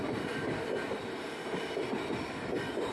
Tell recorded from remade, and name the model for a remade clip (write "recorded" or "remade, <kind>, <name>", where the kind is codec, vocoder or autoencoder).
remade, vocoder, BigVGAN v2